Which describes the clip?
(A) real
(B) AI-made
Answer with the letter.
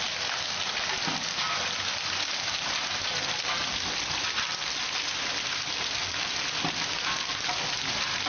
A